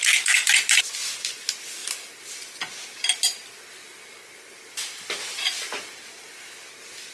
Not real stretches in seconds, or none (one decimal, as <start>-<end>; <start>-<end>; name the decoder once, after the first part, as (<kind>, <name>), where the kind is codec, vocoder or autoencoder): none